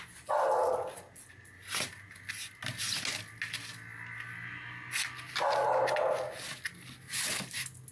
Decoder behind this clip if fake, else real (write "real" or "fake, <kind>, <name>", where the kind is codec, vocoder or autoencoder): real